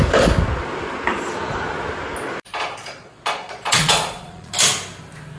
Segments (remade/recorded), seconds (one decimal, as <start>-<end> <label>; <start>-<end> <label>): 0.0-2.8 recorded; 2.8-4.5 remade; 4.5-5.4 recorded